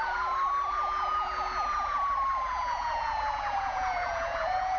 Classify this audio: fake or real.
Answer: fake